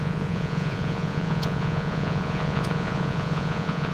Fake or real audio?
fake